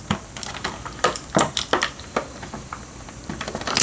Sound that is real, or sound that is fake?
fake